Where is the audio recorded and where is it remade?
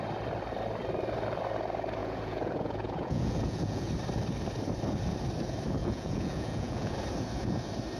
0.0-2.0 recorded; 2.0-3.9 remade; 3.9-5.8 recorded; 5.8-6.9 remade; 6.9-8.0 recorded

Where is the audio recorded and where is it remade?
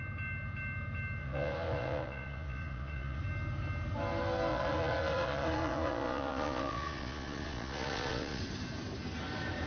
0.0-1.2 recorded; 1.2-3.2 remade; 3.2-4.5 recorded; 4.5-8.4 remade; 8.4-9.7 recorded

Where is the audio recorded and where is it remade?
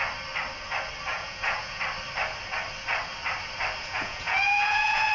0.0-1.1 recorded; 1.1-1.8 remade; 1.8-3.8 recorded; 3.8-5.1 remade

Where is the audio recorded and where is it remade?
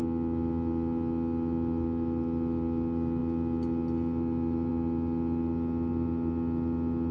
0.0-7.1 recorded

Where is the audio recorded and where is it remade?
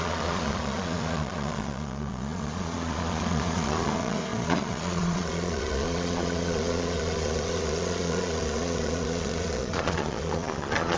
0.0-11.0 remade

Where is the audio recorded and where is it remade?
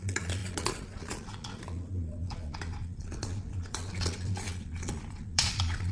0.0-5.9 remade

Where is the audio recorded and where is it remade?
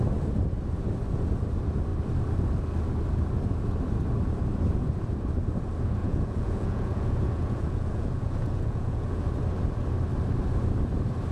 0.0-6.0 recorded; 6.0-9.2 remade; 9.2-11.3 recorded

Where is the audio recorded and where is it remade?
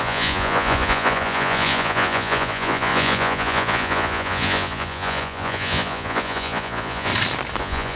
0.0-7.1 remade; 7.1-7.6 recorded; 7.6-8.0 remade